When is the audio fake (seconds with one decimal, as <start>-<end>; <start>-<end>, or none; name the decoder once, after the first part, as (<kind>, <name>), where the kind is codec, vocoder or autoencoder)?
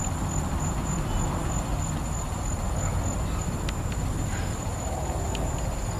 none